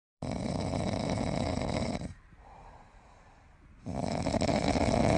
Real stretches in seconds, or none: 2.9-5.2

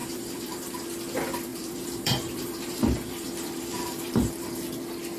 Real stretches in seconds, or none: 0.9-1.5; 4.6-5.2